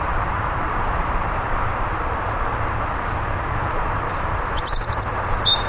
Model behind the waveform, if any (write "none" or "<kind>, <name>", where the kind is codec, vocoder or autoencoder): vocoder, BigVGAN v2